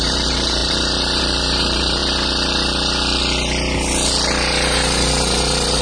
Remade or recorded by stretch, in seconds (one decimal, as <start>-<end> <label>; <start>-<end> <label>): 0.0-2.0 remade; 2.0-5.8 recorded